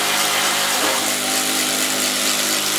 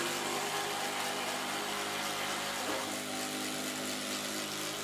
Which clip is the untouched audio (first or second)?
second